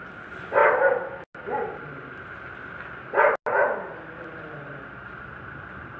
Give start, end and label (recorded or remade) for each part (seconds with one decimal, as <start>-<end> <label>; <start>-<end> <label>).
0.0-6.0 recorded